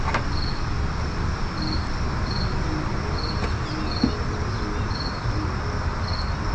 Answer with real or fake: real